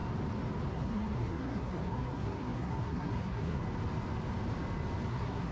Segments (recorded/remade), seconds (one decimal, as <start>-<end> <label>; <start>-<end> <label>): 0.0-0.7 recorded; 0.7-3.6 remade; 3.6-5.1 recorded; 5.1-5.5 remade